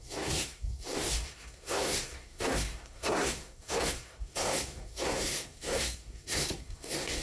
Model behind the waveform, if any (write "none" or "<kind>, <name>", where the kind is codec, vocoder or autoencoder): codec, SNAC